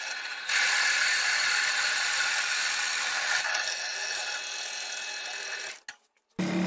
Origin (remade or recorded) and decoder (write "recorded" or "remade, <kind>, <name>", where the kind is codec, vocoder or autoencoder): recorded